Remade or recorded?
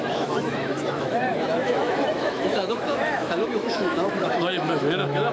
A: remade